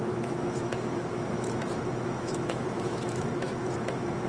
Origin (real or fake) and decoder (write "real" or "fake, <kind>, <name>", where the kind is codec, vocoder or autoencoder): fake, autoencoder, DAC-VAE